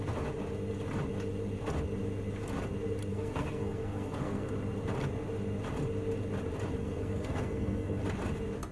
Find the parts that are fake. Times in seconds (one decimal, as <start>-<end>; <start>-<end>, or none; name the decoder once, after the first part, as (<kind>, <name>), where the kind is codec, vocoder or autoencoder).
3.1-4.5 (codec, SNAC); 6.8-8.0